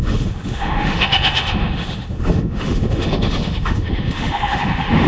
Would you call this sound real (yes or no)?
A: no